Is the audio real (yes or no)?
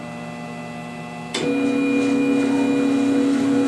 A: yes